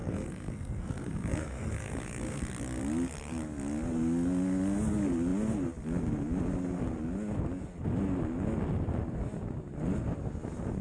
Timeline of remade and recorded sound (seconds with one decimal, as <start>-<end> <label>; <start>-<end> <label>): 0.0-2.4 remade; 2.4-10.8 recorded

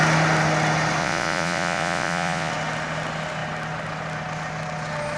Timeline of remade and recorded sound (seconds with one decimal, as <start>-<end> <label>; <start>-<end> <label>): 0.0-1.0 recorded; 1.0-2.5 remade; 2.5-5.2 recorded

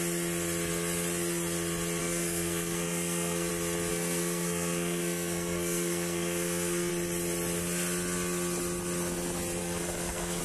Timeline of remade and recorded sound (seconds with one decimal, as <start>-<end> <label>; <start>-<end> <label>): 0.0-2.0 recorded; 2.0-3.5 remade; 3.5-3.9 recorded; 3.9-6.9 remade; 6.9-9.6 recorded; 9.6-10.4 remade

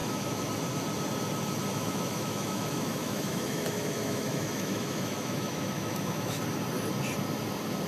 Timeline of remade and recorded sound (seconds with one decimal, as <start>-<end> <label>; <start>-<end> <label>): 0.0-0.5 remade; 0.5-1.7 recorded; 1.7-6.4 remade; 6.4-7.9 recorded